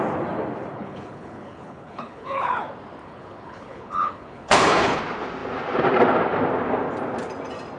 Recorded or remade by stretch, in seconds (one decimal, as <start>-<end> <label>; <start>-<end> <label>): 0.0-0.7 recorded; 0.7-2.6 remade; 2.6-3.0 recorded; 3.0-5.0 remade; 5.0-7.8 recorded